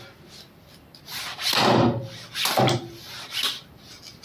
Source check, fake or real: real